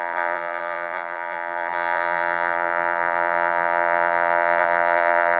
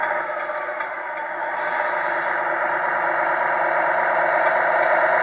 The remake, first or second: first